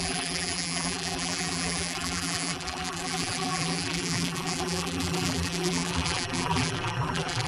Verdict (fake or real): fake